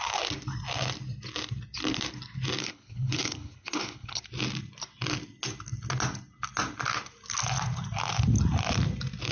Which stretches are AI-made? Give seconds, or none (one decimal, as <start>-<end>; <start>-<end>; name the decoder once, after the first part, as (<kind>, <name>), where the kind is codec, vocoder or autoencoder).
2.6-4.2 (codec, HILCodec)